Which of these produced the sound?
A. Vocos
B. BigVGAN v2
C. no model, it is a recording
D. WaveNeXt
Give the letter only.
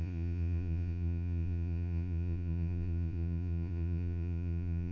A